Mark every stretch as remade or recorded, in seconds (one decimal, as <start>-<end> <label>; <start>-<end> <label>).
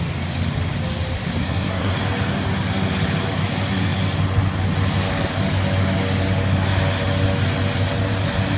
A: 0.0-1.4 recorded; 1.4-1.9 remade; 1.9-8.6 recorded